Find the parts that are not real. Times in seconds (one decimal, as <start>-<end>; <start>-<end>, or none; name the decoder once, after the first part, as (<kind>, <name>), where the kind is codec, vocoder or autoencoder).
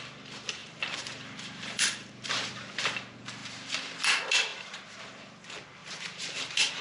0.6-2.7 (vocoder, BigVGAN v2); 4.5-5.0; 5.8-6.8